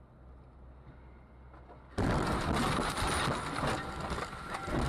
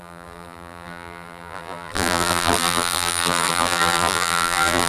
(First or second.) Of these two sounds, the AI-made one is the second